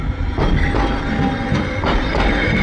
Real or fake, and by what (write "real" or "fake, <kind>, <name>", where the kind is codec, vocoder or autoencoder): real